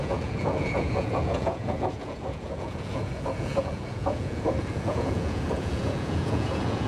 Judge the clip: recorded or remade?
remade